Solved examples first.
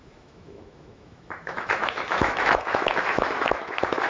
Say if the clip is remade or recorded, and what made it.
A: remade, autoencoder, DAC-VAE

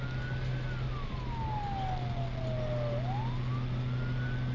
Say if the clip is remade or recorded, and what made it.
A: recorded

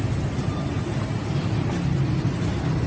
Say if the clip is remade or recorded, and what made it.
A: recorded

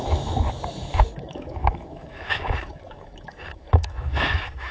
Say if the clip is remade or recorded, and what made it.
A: remade, autoencoder, DAC-VAE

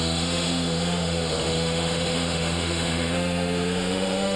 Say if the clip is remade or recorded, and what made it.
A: remade, autoencoder, DAC-VAE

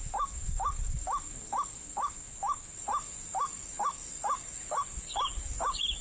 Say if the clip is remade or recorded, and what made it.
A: remade, autoencoder, DAC-VAE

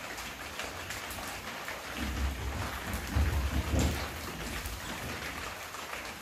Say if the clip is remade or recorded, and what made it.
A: recorded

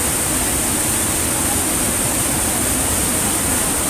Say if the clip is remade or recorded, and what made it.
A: recorded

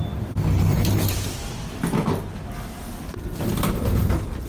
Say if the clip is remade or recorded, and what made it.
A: recorded